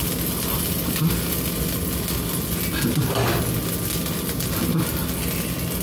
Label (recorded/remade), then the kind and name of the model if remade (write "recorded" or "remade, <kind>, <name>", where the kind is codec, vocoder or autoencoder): recorded